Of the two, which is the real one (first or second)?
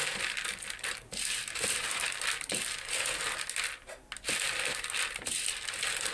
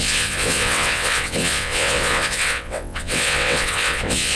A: first